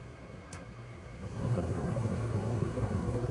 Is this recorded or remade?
remade